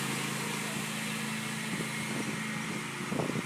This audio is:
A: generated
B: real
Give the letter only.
B